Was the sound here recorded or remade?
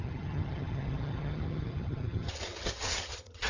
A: remade